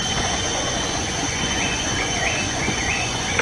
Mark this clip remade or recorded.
remade